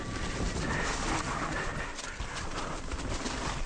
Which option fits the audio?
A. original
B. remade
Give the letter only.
A